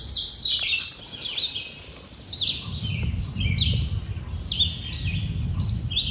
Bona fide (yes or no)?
yes